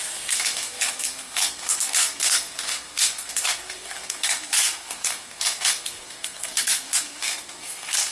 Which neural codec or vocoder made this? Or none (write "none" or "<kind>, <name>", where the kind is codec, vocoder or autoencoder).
codec, SNAC